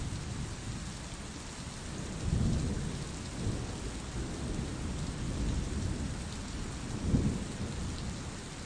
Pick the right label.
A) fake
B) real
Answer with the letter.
B